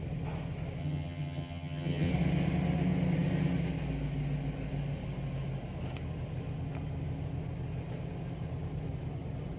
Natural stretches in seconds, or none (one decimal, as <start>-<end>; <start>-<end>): 0.0-0.8; 2.1-9.6